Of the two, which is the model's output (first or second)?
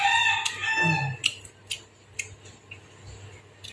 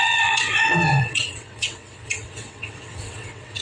second